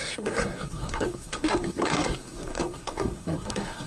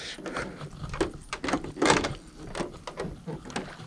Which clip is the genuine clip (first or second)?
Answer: second